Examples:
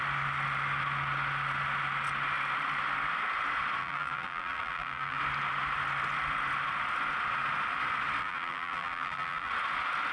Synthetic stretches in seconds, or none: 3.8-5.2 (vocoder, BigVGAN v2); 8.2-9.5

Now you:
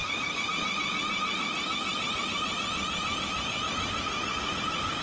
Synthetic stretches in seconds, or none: 0.0-0.5 (vocoder, BigVGAN v2); 1.9-5.0